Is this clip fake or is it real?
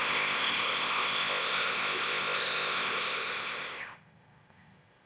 fake